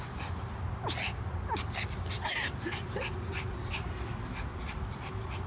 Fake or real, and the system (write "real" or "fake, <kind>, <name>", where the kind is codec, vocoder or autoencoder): real